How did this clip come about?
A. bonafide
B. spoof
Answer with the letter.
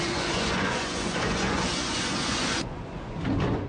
B